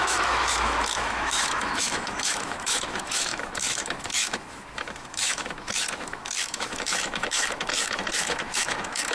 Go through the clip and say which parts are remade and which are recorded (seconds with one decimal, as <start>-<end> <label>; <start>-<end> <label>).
0.0-9.1 remade

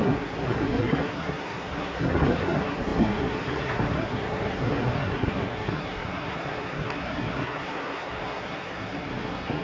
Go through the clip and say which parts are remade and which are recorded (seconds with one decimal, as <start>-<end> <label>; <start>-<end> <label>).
0.0-9.6 remade

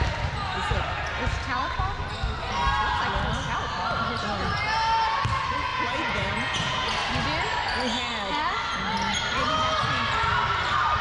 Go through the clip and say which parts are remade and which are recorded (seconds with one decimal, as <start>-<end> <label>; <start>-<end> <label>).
0.0-5.7 recorded; 5.7-6.8 remade; 6.8-11.0 recorded

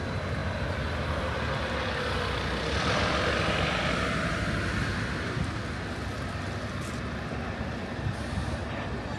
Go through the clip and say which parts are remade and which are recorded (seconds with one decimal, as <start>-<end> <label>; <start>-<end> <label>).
0.0-9.2 recorded